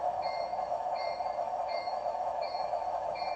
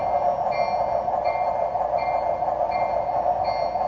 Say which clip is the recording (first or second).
second